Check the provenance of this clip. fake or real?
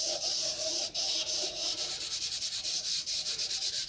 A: fake